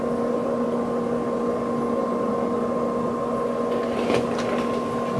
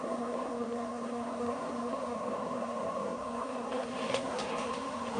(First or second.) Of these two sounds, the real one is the first